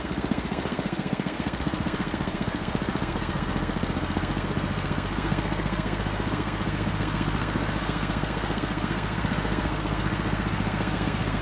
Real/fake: fake